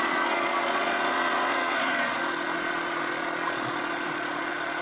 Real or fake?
fake